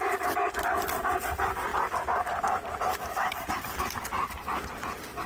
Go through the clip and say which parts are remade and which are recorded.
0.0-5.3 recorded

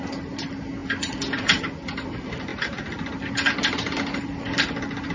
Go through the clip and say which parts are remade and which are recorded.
0.0-5.1 recorded

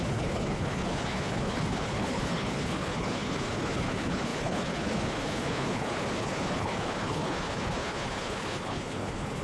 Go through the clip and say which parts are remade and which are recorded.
0.0-9.4 remade

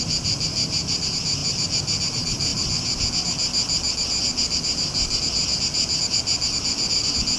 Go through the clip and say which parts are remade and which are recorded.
0.0-7.4 recorded

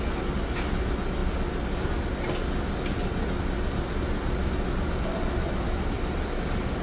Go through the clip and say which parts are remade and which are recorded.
0.0-6.8 recorded

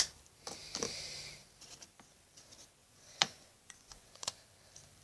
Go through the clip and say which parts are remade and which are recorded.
0.0-2.8 recorded; 2.8-4.4 remade; 4.4-5.0 recorded

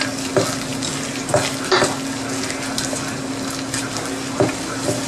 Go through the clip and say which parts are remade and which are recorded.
0.0-5.1 recorded

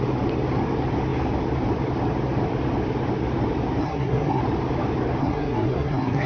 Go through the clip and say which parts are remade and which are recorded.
0.0-3.8 recorded; 3.8-4.4 remade; 4.4-5.2 recorded; 5.2-6.3 remade